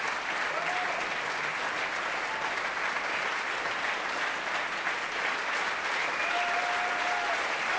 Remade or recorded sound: recorded